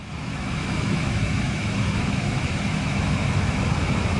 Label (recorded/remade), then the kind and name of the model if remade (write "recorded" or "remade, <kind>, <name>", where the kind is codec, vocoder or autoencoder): remade, autoencoder, DAC-VAE